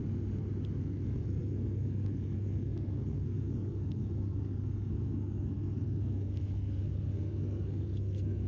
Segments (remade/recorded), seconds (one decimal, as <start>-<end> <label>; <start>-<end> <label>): 0.0-0.8 recorded; 0.8-8.5 remade

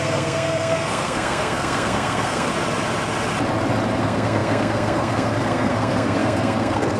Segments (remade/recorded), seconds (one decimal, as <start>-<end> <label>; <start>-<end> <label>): 0.0-2.5 remade; 2.5-4.0 recorded; 4.0-7.0 remade

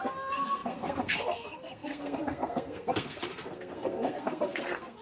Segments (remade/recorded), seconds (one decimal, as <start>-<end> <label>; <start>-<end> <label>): 0.0-5.0 remade

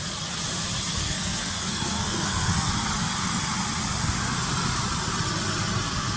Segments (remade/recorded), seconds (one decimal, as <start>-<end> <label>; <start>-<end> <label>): 0.0-1.0 recorded; 1.0-2.7 remade; 2.7-6.2 recorded